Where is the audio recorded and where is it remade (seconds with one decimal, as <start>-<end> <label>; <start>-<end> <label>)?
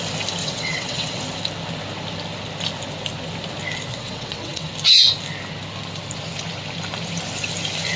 0.0-0.4 recorded; 0.4-1.2 remade; 1.2-3.9 recorded; 3.9-4.7 remade; 4.7-8.0 recorded